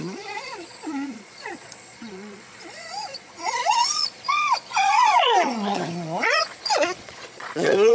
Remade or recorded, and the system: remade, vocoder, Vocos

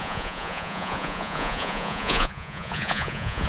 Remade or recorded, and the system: remade, vocoder, Vocos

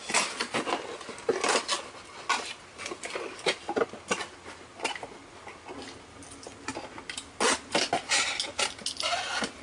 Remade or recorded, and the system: recorded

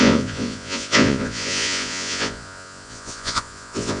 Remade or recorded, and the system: remade, vocoder, Vocos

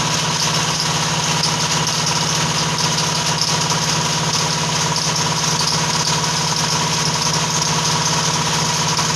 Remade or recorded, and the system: recorded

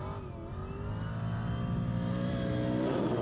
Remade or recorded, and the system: recorded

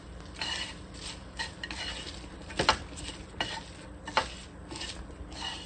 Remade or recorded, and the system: recorded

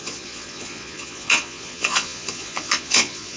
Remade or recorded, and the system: remade, vocoder, Vocos